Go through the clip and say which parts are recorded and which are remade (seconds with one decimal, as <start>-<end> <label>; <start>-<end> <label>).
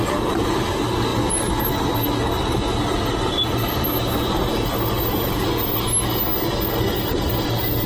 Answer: 0.0-7.9 recorded